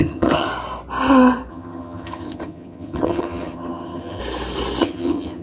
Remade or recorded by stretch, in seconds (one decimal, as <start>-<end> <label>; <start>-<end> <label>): 0.0-0.5 remade; 0.5-1.5 recorded; 1.5-4.2 remade; 4.2-4.8 recorded; 4.8-5.4 remade